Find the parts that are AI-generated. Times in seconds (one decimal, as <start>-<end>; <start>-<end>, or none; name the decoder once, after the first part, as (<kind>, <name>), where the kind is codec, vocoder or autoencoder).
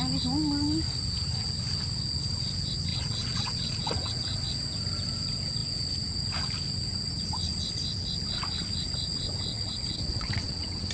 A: 2.9-4.4 (vocoder, WaveNeXt); 9.5-10.9